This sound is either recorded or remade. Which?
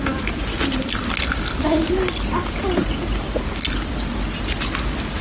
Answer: recorded